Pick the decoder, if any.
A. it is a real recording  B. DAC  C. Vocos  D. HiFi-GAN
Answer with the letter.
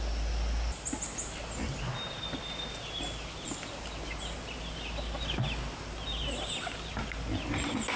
A